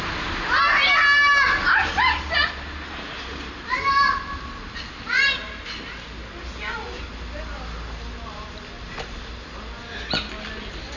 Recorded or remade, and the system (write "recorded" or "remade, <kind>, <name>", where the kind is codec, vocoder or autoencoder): recorded